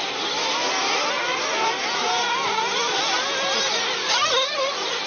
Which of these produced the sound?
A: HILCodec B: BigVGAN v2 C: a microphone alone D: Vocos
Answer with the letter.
C